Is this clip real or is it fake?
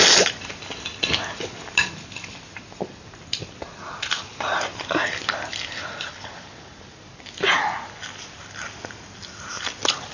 real